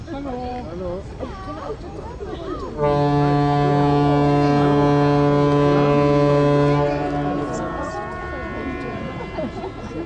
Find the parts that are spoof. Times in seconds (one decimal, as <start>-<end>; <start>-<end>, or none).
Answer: none